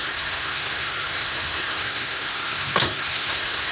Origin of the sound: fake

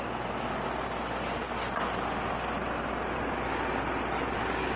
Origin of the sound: real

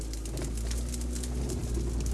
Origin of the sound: real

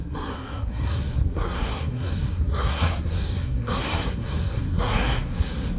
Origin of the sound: fake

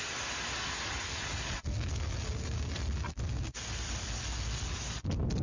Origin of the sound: real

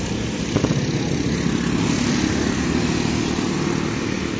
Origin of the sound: real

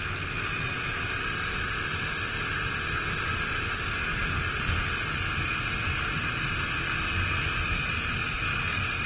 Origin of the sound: real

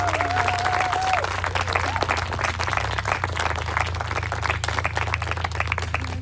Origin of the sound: real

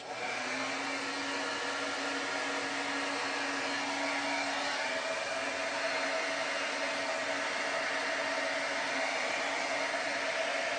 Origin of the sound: real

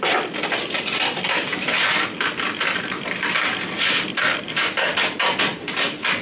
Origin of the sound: real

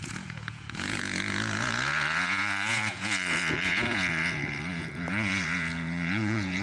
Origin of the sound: fake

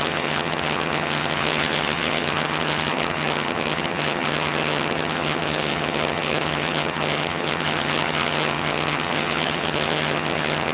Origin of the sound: fake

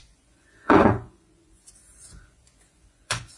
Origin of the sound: fake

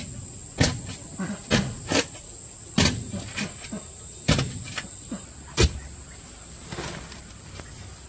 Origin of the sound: real